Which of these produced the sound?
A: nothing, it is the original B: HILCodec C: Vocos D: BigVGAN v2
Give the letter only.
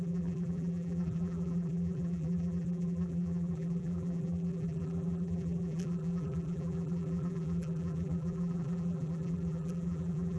D